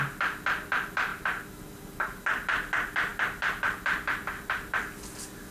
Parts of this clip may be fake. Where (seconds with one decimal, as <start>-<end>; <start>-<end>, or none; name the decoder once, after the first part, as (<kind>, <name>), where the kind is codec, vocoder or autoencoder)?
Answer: 1.1-2.2 (vocoder, BigVGAN v2)